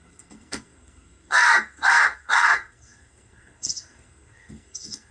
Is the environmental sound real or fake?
fake